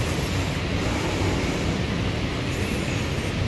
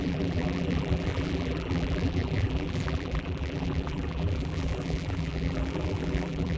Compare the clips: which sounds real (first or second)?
first